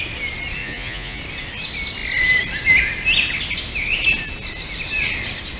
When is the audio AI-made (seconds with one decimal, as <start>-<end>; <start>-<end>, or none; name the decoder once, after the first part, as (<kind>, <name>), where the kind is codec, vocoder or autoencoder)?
0.6-1.2 (vocoder, Vocos)